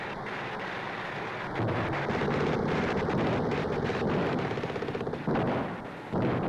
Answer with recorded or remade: recorded